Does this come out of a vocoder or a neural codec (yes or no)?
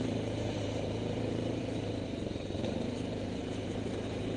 yes